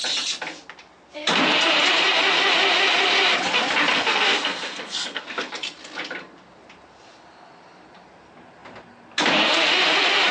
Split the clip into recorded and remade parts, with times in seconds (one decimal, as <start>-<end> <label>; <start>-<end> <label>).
0.0-3.9 recorded; 3.9-5.5 remade; 5.5-10.3 recorded